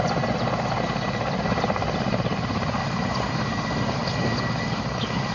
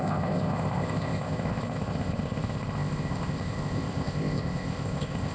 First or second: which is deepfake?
second